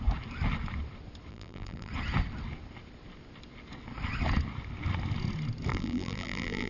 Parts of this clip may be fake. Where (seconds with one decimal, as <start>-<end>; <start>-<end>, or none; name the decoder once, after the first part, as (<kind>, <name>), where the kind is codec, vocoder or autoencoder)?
1.3-1.9 (vocoder, BigVGAN v2); 5.7-6.7